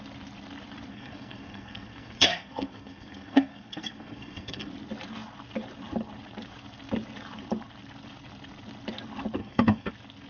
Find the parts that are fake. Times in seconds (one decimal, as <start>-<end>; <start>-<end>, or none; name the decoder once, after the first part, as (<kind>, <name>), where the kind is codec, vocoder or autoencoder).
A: 0.9-4.7 (codec, SNAC); 9.4-9.9